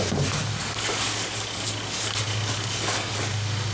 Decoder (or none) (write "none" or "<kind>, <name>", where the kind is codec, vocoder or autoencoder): codec, DAC